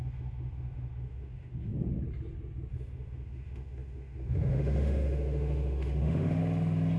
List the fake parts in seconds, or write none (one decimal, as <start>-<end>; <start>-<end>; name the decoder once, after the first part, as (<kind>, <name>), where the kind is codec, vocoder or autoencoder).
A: 0.0-1.7 (autoencoder, DAC-VAE); 2.7-6.4